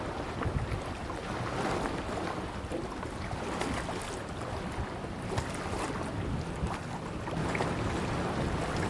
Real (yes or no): yes